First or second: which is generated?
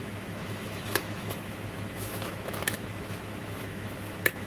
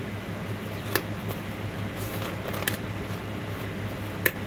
first